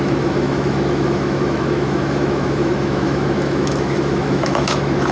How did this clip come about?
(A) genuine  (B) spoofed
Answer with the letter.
B